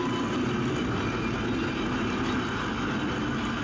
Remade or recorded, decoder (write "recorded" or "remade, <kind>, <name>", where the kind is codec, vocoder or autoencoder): recorded